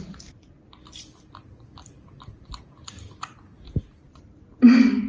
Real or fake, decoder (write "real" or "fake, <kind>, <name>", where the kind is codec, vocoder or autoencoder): real